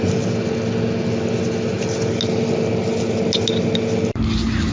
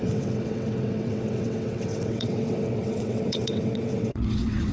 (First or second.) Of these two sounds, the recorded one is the first